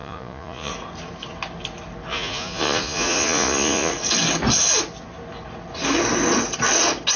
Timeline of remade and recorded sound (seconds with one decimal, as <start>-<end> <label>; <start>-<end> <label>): 0.0-0.7 remade; 0.7-2.1 recorded; 2.1-3.9 remade; 3.9-7.2 recorded